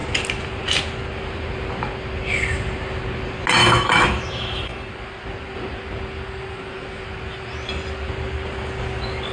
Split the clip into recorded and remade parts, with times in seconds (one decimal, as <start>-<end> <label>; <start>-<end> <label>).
0.0-3.6 recorded; 3.6-4.9 remade; 4.9-9.3 recorded